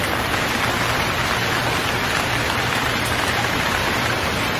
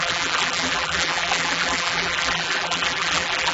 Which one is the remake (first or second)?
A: second